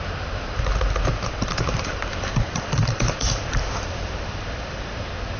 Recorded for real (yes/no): no